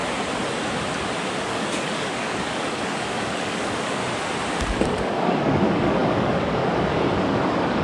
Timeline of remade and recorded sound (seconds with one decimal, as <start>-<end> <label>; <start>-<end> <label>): 0.0-1.4 recorded; 1.4-4.0 remade; 4.0-4.6 recorded; 4.6-7.8 remade

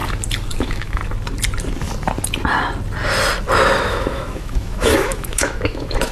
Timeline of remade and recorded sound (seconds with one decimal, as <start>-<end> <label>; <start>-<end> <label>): 0.0-0.6 recorded; 0.6-1.0 remade; 1.0-3.8 recorded; 3.8-6.1 remade

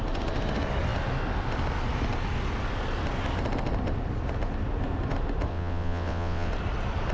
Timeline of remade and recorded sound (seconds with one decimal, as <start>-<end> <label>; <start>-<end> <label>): 0.0-5.5 recorded; 5.5-6.5 remade; 6.5-7.1 recorded

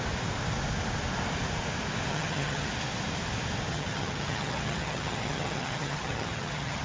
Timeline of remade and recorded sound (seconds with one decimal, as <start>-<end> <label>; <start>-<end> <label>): 0.0-2.1 recorded; 2.1-2.7 remade; 2.7-3.7 recorded; 3.7-6.8 remade

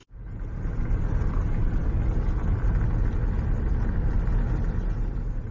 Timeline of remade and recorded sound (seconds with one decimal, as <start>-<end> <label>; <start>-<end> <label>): 0.0-5.5 recorded